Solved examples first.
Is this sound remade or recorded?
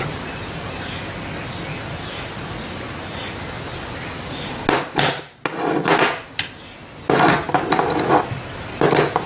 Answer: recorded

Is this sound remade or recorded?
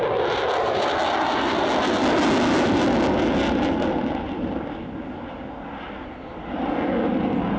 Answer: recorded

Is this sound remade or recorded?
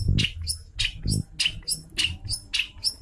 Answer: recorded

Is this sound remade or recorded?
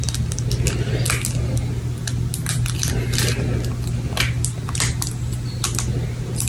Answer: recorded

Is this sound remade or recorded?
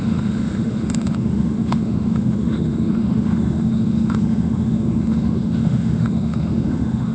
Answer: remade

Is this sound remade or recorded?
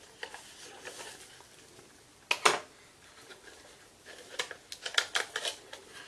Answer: recorded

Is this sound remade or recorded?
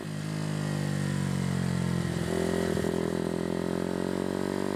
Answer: recorded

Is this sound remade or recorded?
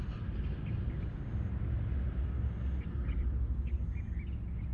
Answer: recorded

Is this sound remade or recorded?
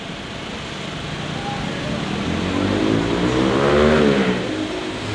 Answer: recorded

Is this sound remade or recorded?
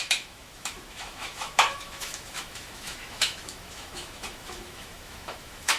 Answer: remade